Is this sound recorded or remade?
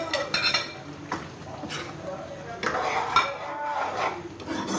recorded